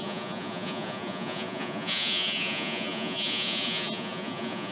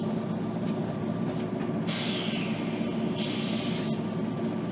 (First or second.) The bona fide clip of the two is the second